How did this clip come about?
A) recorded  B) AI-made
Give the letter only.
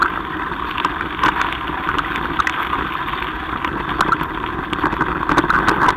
A